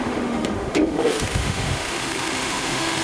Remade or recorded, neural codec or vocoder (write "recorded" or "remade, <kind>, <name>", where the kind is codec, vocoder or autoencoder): remade, autoencoder, DAC-VAE